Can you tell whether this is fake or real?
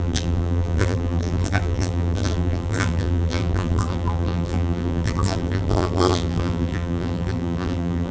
fake